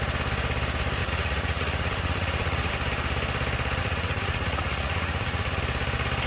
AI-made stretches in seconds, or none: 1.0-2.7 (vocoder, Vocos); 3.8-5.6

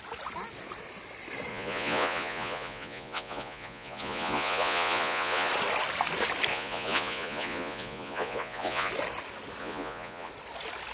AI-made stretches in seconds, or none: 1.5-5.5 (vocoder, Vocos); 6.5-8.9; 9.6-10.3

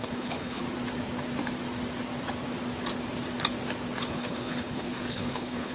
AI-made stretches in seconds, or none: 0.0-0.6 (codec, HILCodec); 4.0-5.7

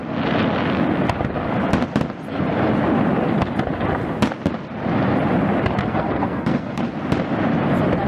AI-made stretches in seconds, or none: 5.8-6.8 (codec, SNAC)